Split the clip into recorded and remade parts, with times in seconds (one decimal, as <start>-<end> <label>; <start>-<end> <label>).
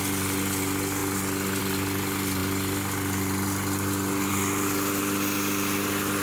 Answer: 0.0-6.2 recorded